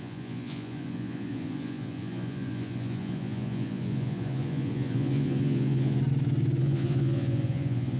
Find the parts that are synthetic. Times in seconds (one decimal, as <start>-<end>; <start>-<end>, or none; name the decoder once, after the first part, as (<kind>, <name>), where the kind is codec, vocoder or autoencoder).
0.0-6.0 (vocoder, Vocos); 6.6-8.0